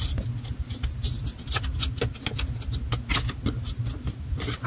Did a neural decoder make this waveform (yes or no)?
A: no